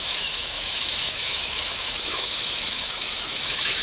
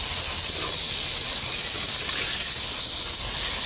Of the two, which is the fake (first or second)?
first